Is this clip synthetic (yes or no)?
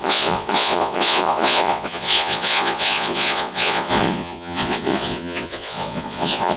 yes